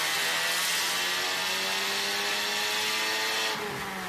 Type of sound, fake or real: real